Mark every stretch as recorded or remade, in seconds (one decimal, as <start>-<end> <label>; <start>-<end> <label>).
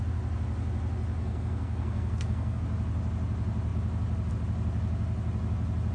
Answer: 0.0-1.2 recorded; 1.2-2.6 remade; 2.6-5.9 recorded